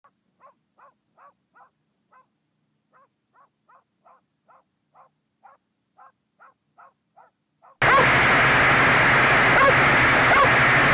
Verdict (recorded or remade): recorded